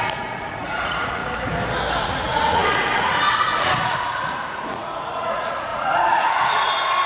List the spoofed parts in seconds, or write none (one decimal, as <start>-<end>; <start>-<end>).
0.0-1.2; 2.0-7.1